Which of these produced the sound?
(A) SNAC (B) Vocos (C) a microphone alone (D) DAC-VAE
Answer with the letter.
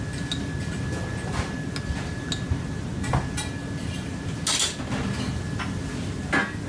C